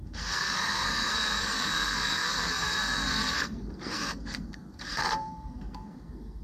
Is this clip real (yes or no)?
no